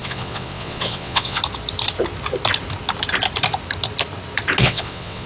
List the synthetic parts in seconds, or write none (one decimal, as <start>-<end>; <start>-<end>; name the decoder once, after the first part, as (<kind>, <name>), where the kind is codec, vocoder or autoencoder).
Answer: 0.0-1.4 (vocoder, WaveNeXt); 4.6-5.3